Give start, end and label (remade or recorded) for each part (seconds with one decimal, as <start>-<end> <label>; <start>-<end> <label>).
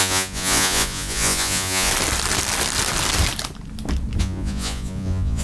0.0-1.9 remade; 1.9-4.2 recorded; 4.2-5.4 remade